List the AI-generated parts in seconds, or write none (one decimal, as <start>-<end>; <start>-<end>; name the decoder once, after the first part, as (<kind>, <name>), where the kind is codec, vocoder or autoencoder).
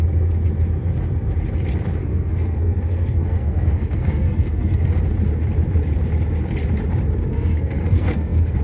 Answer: 2.0-5.0 (codec, SNAC); 7.3-8.6